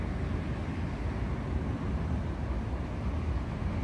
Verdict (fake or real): real